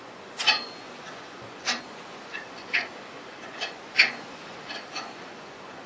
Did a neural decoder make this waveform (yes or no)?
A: yes